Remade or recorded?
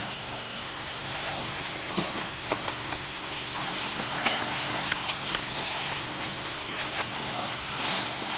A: remade